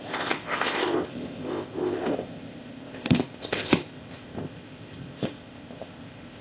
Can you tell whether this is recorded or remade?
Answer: remade